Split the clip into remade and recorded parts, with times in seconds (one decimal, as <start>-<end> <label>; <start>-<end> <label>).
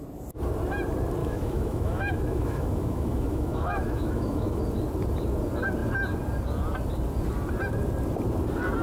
0.0-1.2 recorded; 1.2-4.6 remade; 4.6-8.8 recorded